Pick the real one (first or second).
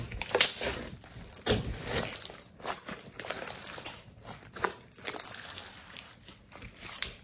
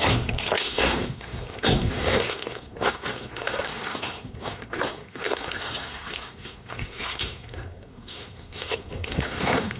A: first